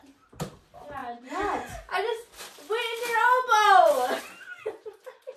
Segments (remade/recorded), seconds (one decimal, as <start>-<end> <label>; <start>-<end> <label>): 0.0-5.4 recorded

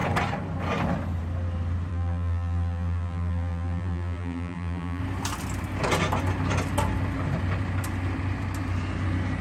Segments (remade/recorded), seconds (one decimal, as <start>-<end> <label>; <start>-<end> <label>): 0.0-1.9 recorded; 1.9-5.0 remade; 5.0-9.4 recorded